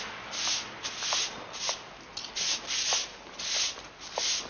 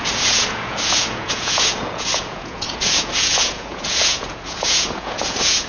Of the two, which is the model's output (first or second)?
second